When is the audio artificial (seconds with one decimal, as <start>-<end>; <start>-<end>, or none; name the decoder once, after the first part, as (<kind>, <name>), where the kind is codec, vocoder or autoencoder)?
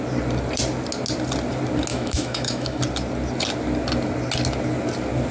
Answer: 1.9-2.8 (autoencoder, DAC-VAE)